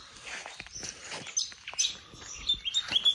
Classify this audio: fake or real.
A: real